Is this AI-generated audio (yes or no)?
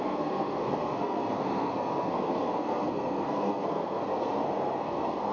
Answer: yes